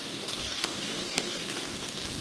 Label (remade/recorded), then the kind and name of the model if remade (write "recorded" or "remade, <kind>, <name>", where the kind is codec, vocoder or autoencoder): remade, codec, DAC